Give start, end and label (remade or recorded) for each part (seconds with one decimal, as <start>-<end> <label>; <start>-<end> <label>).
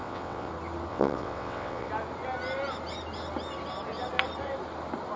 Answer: 0.0-0.5 remade; 0.5-0.9 recorded; 0.9-1.9 remade; 1.9-5.2 recorded